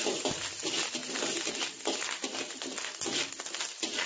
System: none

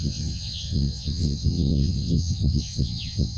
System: vocoder, WaveNeXt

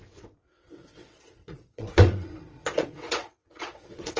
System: vocoder, WaveNeXt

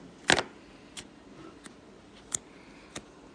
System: none